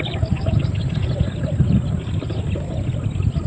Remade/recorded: recorded